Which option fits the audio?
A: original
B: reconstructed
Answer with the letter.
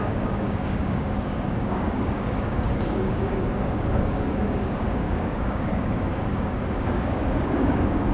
B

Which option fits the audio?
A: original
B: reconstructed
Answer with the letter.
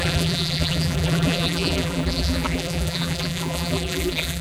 B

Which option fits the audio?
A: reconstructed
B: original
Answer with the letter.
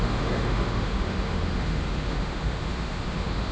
A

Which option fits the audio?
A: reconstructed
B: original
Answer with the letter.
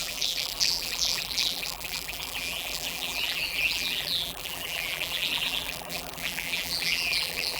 A